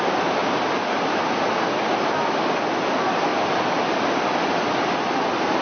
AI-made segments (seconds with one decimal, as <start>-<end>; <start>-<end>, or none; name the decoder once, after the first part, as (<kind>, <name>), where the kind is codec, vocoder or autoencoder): none